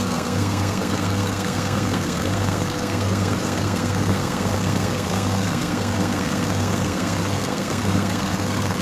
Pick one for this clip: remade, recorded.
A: remade